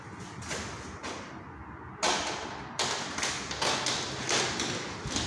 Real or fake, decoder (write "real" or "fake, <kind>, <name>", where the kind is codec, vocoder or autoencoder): real